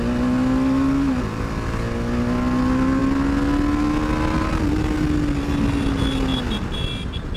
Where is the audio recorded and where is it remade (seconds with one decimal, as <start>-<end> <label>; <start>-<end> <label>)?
0.0-7.4 recorded